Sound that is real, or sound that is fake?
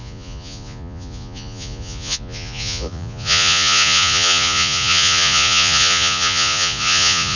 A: fake